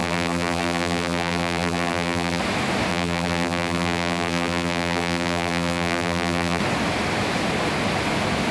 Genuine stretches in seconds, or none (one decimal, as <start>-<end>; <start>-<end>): 2.4-2.9; 6.6-8.5